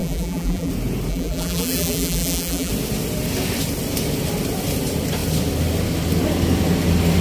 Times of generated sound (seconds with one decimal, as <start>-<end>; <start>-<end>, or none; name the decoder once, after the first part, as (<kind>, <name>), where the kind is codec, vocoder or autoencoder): 0.0-0.7 (vocoder, BigVGAN v2); 1.1-2.7